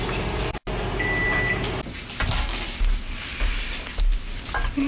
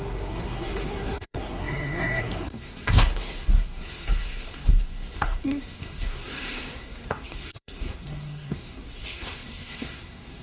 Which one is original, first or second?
first